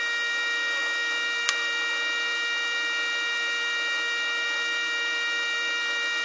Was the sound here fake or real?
real